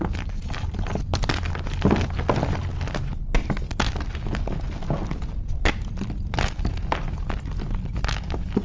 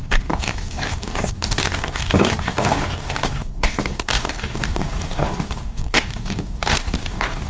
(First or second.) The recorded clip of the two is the first